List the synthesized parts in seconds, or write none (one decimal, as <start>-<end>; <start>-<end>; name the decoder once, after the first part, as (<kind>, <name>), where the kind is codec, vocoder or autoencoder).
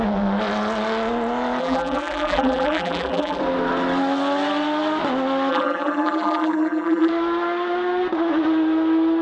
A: 1.6-3.4 (vocoder, BigVGAN v2); 5.5-7.1